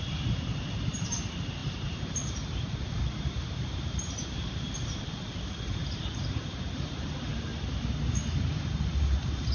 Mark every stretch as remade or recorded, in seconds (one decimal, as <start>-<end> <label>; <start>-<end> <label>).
0.0-7.5 remade; 7.5-8.1 recorded; 8.1-9.5 remade